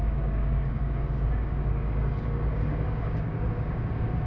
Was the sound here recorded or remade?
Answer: remade